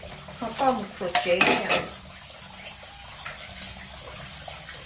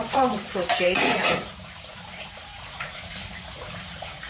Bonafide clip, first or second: first